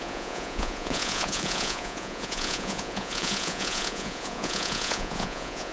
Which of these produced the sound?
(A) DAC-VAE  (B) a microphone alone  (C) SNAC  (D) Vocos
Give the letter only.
D